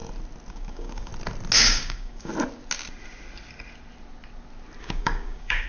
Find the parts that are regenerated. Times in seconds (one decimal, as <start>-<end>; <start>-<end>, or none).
0.5-1.1; 1.6-2.3; 4.8-5.7